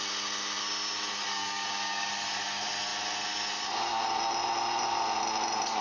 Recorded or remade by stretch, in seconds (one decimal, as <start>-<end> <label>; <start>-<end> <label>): 0.0-1.4 recorded; 1.4-2.1 remade; 2.1-5.8 recorded